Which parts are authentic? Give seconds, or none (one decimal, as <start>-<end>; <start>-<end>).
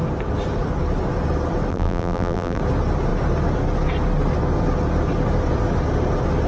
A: 0.0-1.7; 2.6-6.5